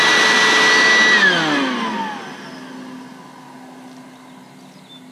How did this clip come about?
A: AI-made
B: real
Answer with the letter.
B